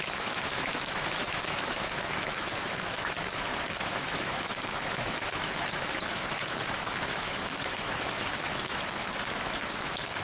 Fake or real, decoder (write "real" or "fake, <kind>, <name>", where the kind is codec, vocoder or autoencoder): fake, autoencoder, DAC-VAE